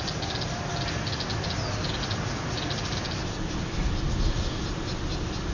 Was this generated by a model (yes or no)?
no